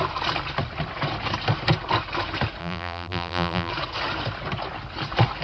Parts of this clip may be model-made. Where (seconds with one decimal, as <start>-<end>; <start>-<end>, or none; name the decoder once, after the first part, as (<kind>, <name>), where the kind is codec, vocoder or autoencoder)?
2.6-3.7 (vocoder, BigVGAN v2)